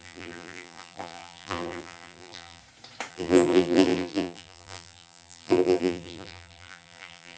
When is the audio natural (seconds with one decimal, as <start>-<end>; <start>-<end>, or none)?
2.6-3.1